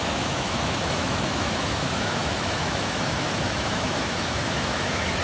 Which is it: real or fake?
fake